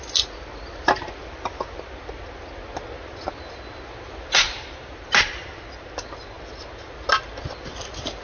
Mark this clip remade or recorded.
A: recorded